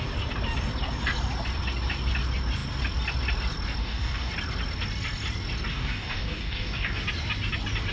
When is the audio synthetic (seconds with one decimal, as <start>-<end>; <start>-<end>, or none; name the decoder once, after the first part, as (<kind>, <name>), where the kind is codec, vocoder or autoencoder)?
3.8-4.3 (codec, DAC); 5.7-7.0